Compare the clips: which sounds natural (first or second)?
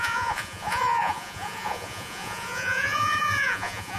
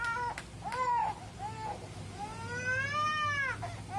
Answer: second